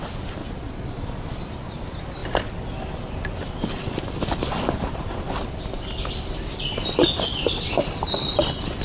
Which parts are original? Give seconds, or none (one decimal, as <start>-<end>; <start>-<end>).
0.0-0.4; 1.2-8.8